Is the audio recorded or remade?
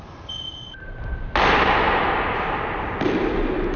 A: recorded